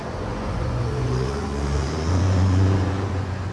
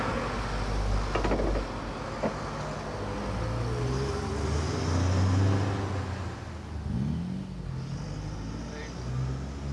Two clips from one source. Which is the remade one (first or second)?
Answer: first